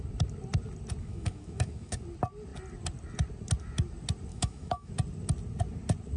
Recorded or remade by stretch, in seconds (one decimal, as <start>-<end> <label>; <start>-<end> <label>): 0.0-1.0 recorded; 1.0-2.0 remade; 2.0-4.3 recorded; 4.3-4.9 remade; 4.9-6.2 recorded